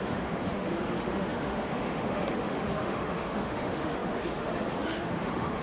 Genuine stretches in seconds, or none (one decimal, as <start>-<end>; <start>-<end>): none